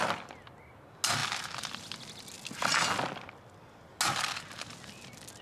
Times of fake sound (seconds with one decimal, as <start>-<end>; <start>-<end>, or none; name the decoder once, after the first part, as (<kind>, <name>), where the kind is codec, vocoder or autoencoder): none